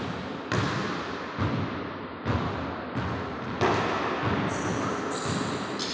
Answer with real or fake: real